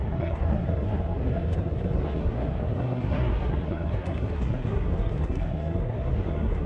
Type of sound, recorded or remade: remade